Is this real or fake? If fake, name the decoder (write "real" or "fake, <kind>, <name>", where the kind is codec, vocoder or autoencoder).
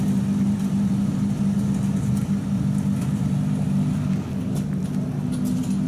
real